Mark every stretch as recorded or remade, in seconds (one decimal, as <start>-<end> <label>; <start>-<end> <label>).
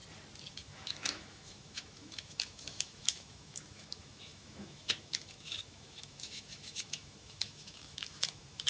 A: 0.0-0.5 recorded; 0.5-8.7 remade